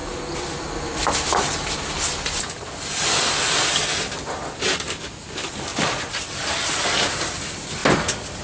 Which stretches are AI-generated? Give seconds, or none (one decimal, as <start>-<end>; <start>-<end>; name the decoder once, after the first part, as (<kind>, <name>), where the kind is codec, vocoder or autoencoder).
none